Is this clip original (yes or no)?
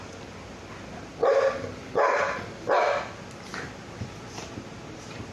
yes